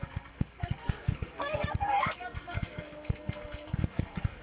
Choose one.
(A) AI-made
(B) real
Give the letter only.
A